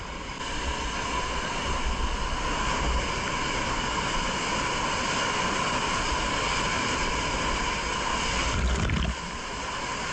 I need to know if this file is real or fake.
real